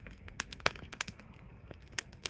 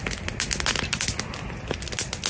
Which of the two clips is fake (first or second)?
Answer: first